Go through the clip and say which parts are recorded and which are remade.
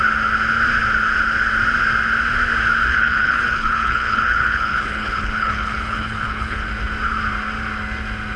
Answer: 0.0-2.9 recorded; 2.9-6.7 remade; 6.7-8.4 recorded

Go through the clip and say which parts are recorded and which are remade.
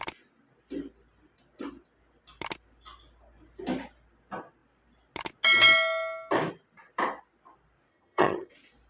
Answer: 0.0-7.9 recorded; 7.9-8.5 remade; 8.5-8.9 recorded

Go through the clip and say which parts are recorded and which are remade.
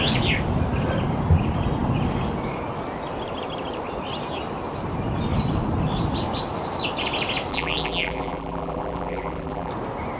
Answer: 0.0-7.5 recorded; 7.5-9.7 remade; 9.7-10.2 recorded